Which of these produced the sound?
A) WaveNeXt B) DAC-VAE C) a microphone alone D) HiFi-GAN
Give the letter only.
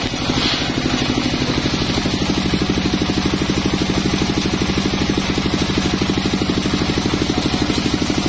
C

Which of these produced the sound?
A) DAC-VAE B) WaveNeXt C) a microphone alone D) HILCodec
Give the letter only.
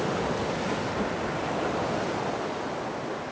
C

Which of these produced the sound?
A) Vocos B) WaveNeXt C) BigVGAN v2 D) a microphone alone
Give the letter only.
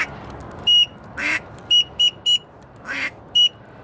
D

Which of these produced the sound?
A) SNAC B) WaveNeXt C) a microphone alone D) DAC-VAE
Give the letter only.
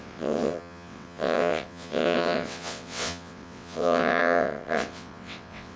B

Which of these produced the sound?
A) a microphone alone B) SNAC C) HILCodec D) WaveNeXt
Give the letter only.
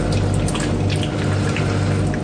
A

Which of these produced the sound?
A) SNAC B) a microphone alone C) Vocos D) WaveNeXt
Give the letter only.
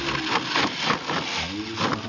B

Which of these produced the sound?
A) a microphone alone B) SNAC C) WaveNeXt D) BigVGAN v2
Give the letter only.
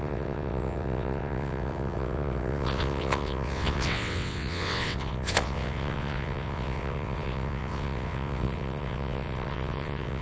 C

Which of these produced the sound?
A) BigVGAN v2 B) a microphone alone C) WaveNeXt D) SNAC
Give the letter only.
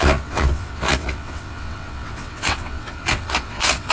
C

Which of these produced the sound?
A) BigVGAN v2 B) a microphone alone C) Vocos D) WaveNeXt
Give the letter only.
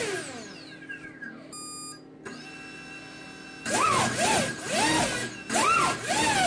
B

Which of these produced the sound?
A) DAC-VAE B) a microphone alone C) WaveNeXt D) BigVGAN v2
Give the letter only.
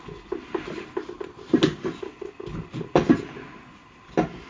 B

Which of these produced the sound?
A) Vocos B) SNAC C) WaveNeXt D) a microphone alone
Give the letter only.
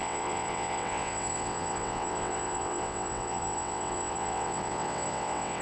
C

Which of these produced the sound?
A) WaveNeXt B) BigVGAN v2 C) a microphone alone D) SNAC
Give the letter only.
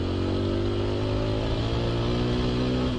C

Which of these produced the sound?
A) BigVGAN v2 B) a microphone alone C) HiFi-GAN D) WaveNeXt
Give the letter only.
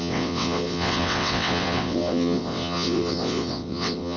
D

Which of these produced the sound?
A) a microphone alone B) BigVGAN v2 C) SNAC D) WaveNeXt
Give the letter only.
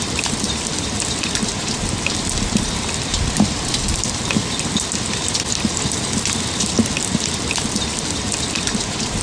A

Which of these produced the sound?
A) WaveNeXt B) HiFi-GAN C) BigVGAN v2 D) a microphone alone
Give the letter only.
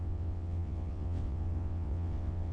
A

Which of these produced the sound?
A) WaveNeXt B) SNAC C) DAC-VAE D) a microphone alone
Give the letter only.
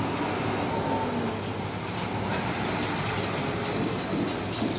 D